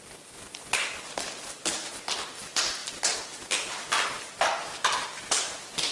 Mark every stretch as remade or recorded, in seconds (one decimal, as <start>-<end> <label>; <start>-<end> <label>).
0.0-5.9 recorded